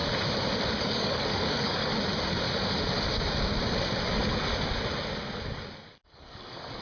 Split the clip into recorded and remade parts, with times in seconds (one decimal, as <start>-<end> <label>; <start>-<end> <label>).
0.0-0.8 recorded; 0.8-1.9 remade; 1.9-5.8 recorded; 5.8-6.8 remade